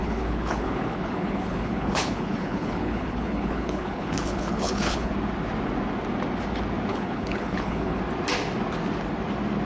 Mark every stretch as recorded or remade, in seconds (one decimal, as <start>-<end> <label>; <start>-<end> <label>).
0.0-5.1 remade; 5.1-6.9 recorded; 6.9-8.0 remade; 8.0-9.7 recorded